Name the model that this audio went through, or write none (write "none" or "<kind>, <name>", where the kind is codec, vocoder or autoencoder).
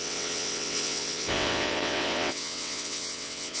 vocoder, WaveNeXt